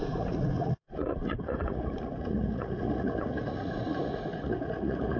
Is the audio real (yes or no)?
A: no